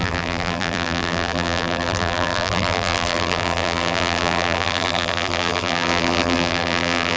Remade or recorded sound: remade